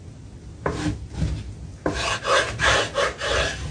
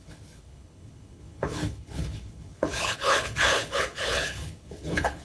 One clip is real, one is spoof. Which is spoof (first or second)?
second